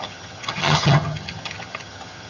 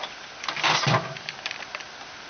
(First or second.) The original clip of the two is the second